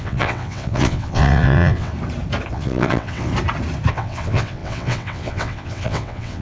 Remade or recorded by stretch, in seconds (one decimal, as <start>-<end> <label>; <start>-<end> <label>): 0.0-1.9 remade; 1.9-2.5 recorded; 2.5-3.3 remade; 3.3-3.9 recorded; 3.9-6.4 remade

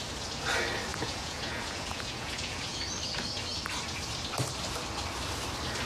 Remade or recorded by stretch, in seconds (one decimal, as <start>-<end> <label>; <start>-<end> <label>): 0.0-0.9 recorded; 0.9-2.8 remade; 2.8-5.9 recorded

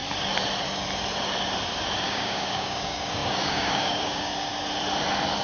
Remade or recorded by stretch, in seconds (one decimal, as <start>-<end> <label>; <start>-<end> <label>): 0.0-2.0 recorded; 2.0-4.5 remade; 4.5-5.4 recorded

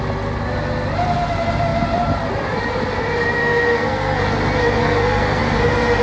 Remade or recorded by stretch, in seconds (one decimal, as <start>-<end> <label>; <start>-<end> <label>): 0.0-3.4 recorded; 3.4-4.2 remade; 4.2-4.8 recorded; 4.8-5.4 remade; 5.4-6.0 recorded

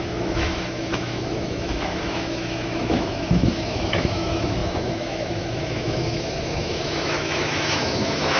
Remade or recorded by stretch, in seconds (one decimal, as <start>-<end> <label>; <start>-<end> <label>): 0.0-8.4 remade

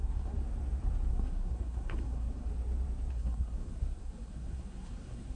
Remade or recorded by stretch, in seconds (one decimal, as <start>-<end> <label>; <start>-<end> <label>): 0.0-0.4 remade; 0.4-1.1 recorded; 1.1-2.5 remade; 2.5-3.1 recorded; 3.1-5.4 remade

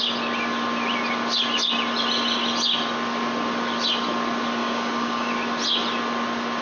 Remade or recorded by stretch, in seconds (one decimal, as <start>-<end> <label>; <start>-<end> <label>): 0.0-4.6 recorded; 4.6-5.3 remade; 5.3-6.6 recorded